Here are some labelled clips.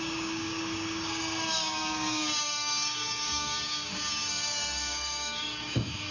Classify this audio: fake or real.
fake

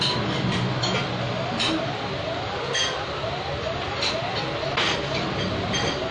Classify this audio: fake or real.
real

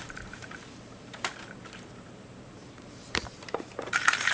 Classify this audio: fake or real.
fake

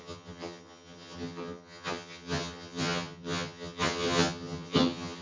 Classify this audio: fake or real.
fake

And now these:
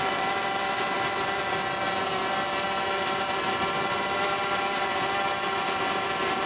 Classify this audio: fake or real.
real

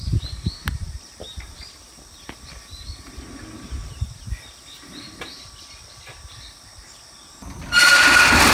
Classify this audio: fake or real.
fake